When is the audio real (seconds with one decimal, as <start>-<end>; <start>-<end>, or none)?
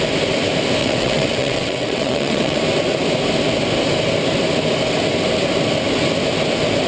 0.0-0.8; 2.6-6.9